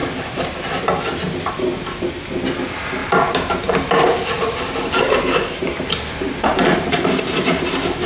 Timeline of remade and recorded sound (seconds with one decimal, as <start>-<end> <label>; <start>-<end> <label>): 0.0-3.0 recorded; 3.0-7.2 remade; 7.2-8.1 recorded